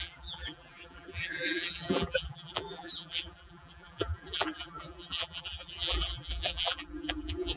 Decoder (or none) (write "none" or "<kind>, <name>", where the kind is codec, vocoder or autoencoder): vocoder, BigVGAN v2